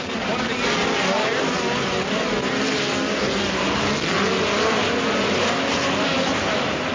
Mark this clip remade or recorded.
recorded